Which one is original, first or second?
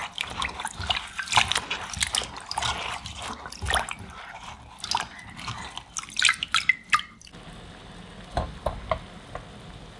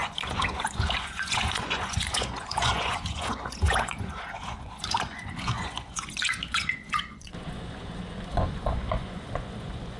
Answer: first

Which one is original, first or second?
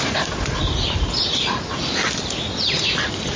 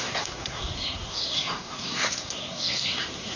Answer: first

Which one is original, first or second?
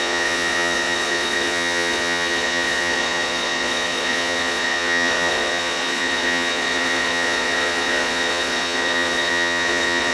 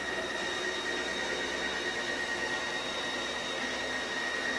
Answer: second